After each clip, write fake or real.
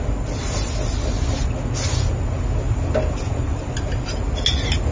real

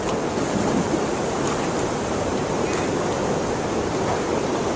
real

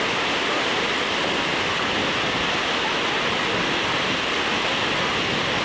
real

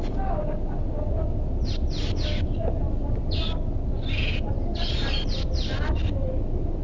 real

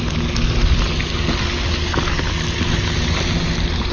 real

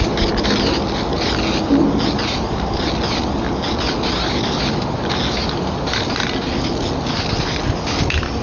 real